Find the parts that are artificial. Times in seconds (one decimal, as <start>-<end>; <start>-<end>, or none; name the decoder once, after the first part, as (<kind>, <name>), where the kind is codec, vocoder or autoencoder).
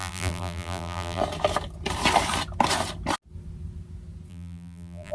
0.0-1.2 (vocoder, BigVGAN v2); 4.3-5.1